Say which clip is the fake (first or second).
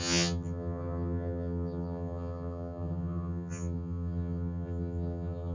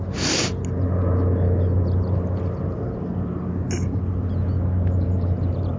first